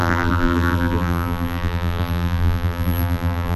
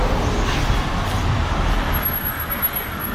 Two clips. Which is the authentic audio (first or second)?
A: second